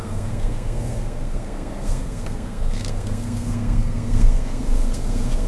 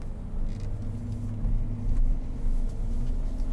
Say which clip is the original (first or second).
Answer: second